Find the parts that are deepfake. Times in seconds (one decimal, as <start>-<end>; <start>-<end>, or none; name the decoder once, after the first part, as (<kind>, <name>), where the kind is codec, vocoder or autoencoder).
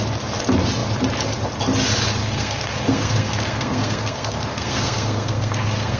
2.2-6.0 (codec, SNAC)